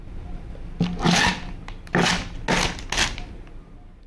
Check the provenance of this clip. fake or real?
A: real